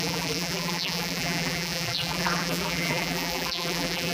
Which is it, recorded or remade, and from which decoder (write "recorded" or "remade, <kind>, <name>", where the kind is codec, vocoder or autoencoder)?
remade, vocoder, BigVGAN v2